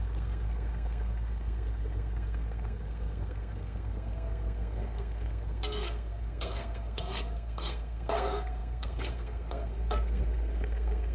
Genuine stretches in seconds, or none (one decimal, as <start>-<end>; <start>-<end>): none